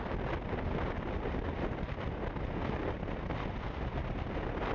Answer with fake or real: real